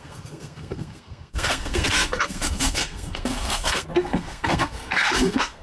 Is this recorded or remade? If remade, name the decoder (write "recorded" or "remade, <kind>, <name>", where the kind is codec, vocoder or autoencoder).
remade, codec, SNAC